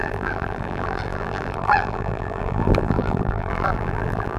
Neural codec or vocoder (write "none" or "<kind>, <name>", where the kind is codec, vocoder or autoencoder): vocoder, BigVGAN v2